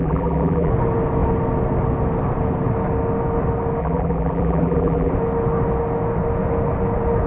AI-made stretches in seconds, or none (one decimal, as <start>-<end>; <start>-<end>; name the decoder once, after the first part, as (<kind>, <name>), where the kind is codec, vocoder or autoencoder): 0.0-0.7 (vocoder, BigVGAN v2); 3.8-5.1